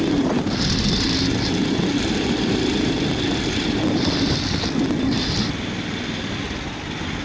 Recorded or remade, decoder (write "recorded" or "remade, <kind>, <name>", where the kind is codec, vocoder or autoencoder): remade, vocoder, BigVGAN v2